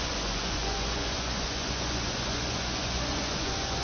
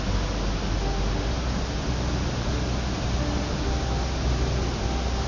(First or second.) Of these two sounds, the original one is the second